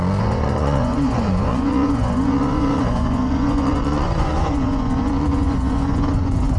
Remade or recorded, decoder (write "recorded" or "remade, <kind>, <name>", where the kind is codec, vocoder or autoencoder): remade, vocoder, Vocos